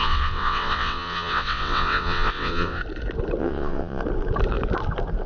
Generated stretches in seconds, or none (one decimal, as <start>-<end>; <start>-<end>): 0.0-2.8; 3.4-4.0